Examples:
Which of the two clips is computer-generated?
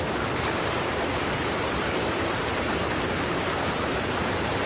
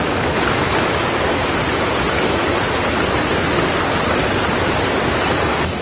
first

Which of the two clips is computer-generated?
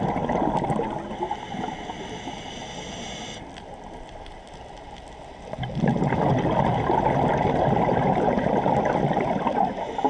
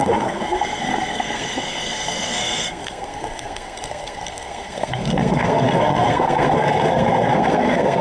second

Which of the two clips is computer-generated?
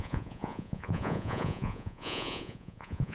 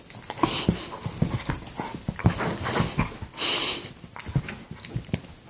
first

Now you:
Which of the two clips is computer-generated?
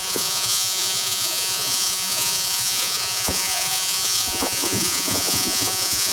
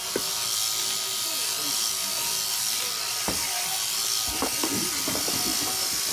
first